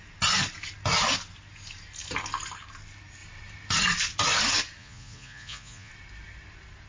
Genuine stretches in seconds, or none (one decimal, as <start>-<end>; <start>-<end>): 0.0-4.8; 5.9-6.9